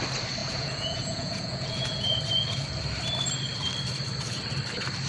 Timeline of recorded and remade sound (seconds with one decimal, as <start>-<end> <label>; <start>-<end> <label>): 0.0-0.4 recorded; 0.4-2.2 remade; 2.2-5.1 recorded